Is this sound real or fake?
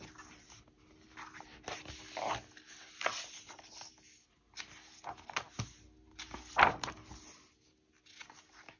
real